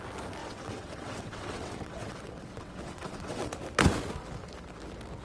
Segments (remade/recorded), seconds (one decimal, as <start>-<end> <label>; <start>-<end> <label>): 0.0-0.4 recorded; 0.4-3.5 remade; 3.5-5.2 recorded